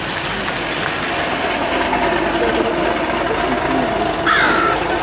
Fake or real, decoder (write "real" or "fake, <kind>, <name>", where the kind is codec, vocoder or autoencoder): real